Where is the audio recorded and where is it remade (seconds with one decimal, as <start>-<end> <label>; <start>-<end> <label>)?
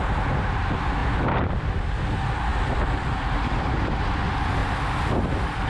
0.0-1.0 recorded; 1.0-1.9 remade; 1.9-2.5 recorded; 2.5-3.9 remade; 3.9-4.6 recorded; 4.6-5.7 remade